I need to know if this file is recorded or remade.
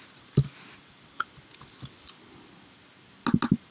recorded